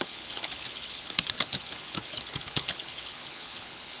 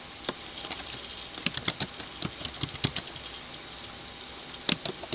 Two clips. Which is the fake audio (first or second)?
first